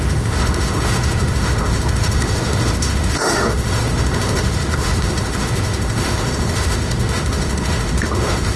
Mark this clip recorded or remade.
remade